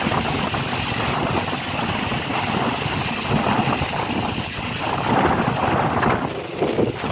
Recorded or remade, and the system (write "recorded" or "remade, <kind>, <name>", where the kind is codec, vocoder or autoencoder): recorded